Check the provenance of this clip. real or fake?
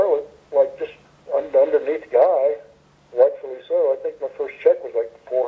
real